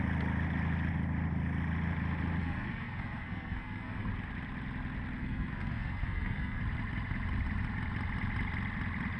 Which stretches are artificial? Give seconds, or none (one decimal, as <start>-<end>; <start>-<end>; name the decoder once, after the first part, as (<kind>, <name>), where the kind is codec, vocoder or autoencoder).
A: 2.4-4.1 (codec, SNAC); 5.2-6.6

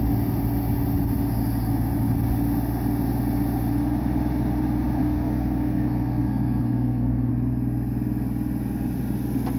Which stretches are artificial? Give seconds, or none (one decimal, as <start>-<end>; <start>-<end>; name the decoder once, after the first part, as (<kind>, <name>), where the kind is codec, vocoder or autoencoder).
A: 5.0-7.3 (codec, SNAC)

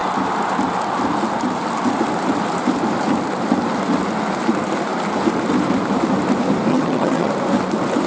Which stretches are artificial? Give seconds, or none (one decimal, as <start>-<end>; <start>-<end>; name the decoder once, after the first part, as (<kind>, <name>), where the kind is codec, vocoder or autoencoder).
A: 6.7-7.3 (vocoder, HiFi-GAN)

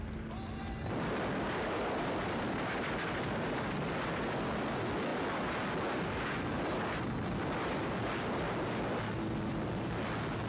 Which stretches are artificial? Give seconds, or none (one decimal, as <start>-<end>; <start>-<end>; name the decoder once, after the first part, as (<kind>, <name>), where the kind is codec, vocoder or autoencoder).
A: none

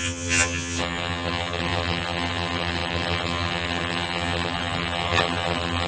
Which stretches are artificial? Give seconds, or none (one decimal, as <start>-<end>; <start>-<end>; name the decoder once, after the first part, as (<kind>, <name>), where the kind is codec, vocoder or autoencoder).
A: 0.0-5.9 (vocoder, HiFi-GAN)

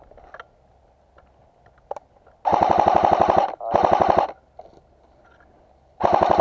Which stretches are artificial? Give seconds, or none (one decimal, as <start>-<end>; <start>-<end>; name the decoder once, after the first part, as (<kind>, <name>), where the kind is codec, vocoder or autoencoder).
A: none